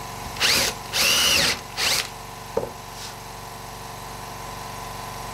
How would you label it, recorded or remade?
recorded